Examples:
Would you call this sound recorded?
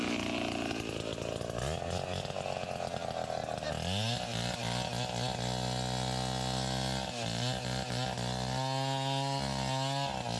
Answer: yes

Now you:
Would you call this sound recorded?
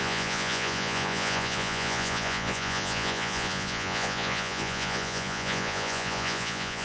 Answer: no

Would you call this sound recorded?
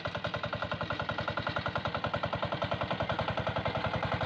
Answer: no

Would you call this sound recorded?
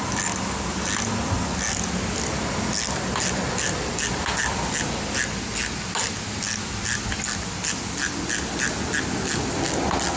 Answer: yes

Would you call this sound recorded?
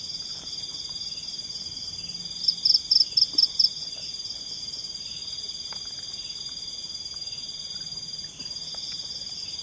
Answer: yes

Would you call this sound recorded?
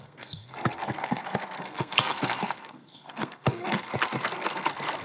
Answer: no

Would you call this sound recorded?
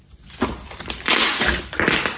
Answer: yes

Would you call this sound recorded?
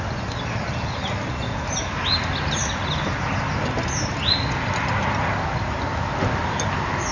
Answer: yes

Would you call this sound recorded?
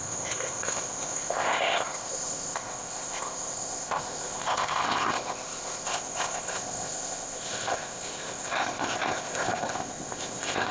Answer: no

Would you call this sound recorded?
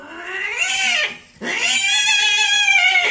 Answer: yes